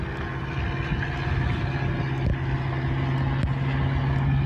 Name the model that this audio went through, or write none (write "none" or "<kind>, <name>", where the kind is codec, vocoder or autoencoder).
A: none